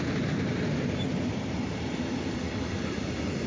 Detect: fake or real real